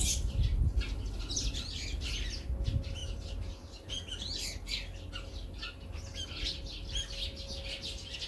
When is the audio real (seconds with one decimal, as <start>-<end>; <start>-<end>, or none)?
0.0-8.3